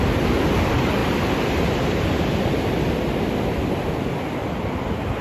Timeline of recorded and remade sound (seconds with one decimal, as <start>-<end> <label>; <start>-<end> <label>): 0.0-5.2 recorded